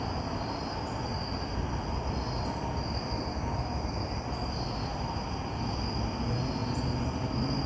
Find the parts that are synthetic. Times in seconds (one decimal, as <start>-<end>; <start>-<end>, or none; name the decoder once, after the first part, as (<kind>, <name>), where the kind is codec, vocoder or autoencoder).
none